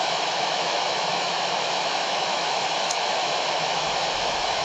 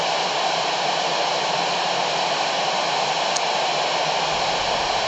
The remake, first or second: first